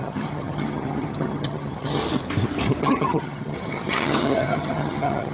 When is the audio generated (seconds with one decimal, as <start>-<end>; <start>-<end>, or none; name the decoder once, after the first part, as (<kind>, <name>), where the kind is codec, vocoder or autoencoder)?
0.0-2.0 (vocoder, HiFi-GAN); 2.8-5.3